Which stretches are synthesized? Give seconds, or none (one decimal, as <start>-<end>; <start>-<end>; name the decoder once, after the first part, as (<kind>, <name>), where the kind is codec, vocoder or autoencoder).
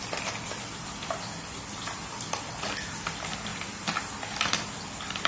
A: none